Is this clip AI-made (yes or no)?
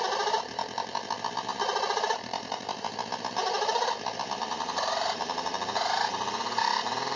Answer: yes